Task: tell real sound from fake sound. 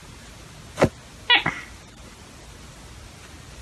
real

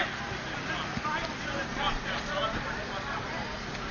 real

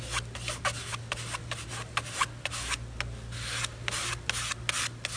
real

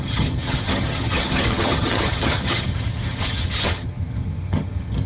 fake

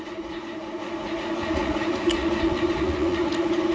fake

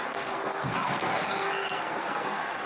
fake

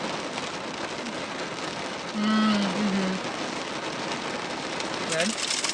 real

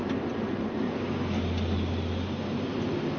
real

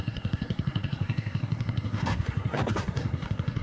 fake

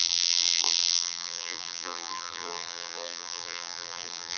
fake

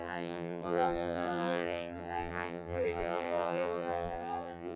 fake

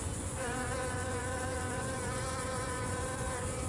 fake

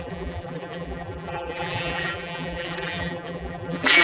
fake